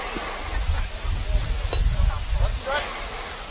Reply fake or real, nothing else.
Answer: real